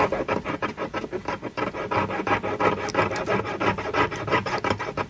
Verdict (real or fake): real